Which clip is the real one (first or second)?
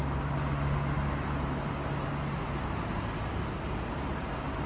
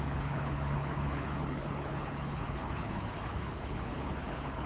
first